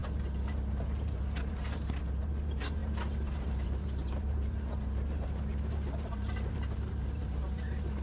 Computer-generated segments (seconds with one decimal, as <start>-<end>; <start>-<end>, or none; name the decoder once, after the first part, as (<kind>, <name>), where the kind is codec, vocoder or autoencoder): 0.0-8.0 (vocoder, BigVGAN v2)